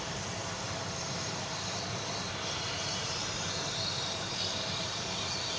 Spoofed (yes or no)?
yes